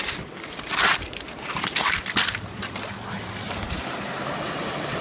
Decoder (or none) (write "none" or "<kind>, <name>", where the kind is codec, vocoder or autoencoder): vocoder, BigVGAN v2